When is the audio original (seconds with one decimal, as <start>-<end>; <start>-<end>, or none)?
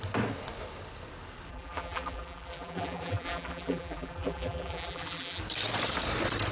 0.0-1.5; 5.4-6.5